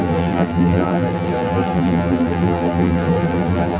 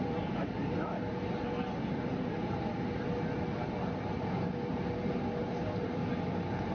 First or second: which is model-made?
first